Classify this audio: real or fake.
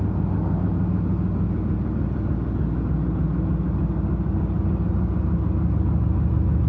real